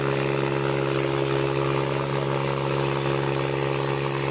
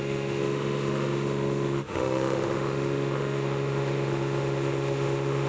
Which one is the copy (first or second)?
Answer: second